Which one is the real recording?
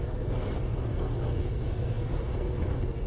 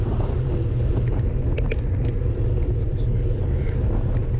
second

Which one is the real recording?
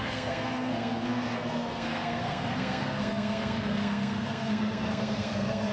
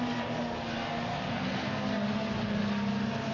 second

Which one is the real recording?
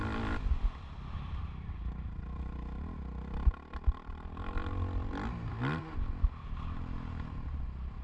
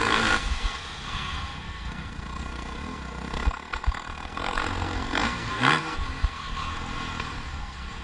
first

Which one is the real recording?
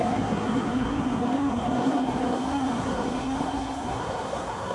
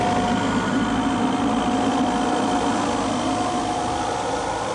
second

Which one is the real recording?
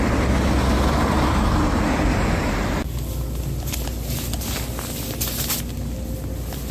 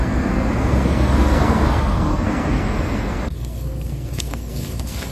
first